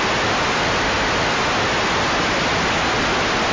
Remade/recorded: recorded